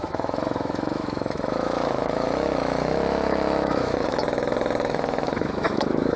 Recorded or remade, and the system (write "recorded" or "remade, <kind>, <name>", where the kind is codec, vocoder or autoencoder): remade, autoencoder, DAC-VAE